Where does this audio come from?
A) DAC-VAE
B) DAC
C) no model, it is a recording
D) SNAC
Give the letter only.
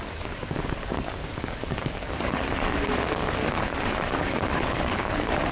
B